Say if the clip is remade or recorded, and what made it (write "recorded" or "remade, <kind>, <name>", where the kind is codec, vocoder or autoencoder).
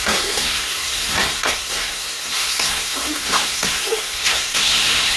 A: remade, codec, SNAC